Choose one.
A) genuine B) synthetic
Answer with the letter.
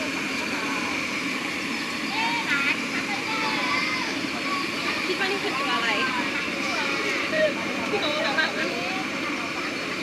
B